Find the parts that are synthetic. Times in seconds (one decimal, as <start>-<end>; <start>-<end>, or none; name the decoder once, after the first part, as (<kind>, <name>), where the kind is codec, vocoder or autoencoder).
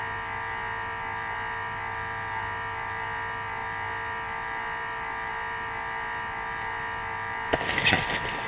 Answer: none